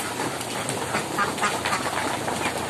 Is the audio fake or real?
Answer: real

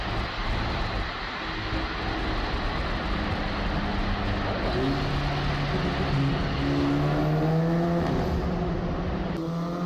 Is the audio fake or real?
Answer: real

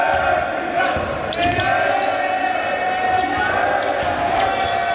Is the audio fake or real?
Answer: real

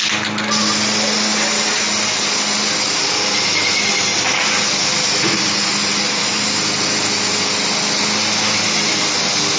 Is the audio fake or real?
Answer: real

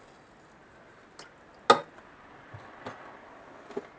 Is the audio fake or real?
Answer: real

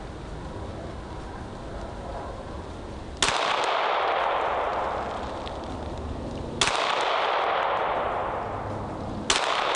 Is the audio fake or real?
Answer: real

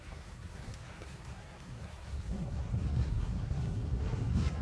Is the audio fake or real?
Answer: fake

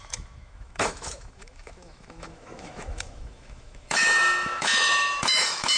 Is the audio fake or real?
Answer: fake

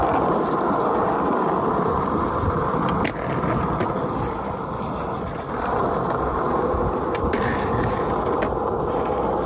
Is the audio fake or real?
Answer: real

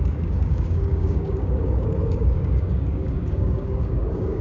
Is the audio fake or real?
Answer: fake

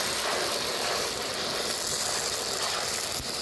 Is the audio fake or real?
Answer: real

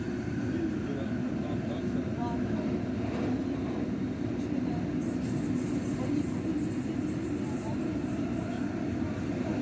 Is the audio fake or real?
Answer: real